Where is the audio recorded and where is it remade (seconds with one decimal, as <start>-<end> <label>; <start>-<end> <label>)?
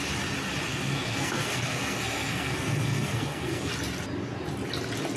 0.0-0.7 recorded; 0.7-3.7 remade; 3.7-5.2 recorded